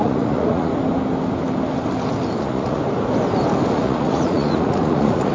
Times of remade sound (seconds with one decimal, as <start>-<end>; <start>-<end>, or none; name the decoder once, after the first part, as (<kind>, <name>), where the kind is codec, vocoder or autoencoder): 0.0-0.7 (vocoder, Vocos); 2.4-2.8; 3.7-5.3

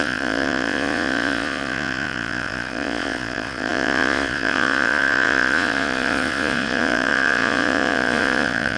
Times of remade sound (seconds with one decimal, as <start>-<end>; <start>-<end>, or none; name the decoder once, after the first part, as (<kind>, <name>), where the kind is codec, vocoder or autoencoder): 0.0-8.8 (vocoder, Vocos)

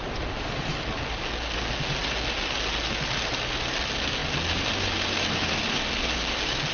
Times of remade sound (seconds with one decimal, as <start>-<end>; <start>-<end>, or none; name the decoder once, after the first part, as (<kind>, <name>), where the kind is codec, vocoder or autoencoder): none

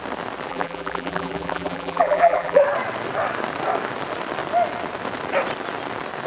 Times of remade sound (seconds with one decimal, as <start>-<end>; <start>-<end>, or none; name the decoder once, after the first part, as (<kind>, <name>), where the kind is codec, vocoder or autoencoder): 0.5-2.6 (vocoder, BigVGAN v2)